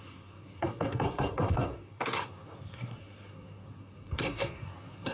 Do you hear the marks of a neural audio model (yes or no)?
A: yes